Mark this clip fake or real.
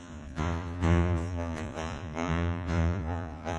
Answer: fake